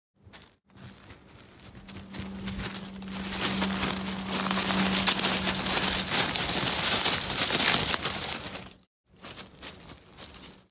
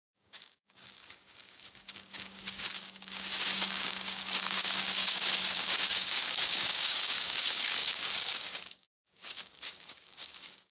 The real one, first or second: first